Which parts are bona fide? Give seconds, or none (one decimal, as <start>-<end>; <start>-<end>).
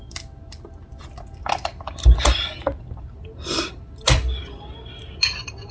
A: 0.0-5.7